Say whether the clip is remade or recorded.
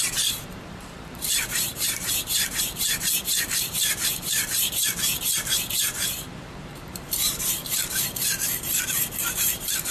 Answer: remade